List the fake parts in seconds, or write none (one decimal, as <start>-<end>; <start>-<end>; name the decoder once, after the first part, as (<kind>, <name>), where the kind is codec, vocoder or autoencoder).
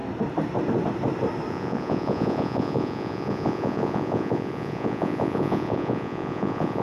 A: 1.5-6.8 (vocoder, Vocos)